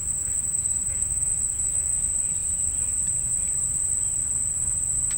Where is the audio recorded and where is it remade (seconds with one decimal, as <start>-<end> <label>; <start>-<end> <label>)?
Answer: 0.0-2.0 remade; 2.0-5.2 recorded